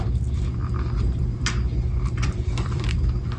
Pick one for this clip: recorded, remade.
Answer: remade